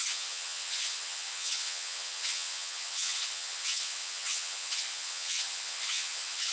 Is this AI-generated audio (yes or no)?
yes